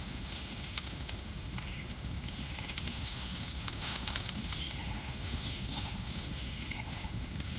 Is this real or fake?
fake